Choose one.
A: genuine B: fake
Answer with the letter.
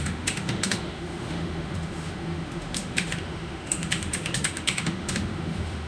B